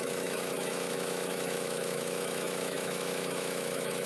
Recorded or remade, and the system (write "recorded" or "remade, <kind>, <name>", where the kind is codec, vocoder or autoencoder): remade, autoencoder, DAC-VAE